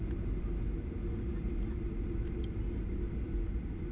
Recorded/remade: recorded